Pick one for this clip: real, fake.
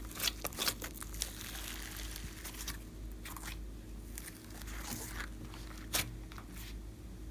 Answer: real